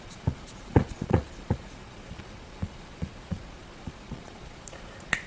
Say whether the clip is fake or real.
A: fake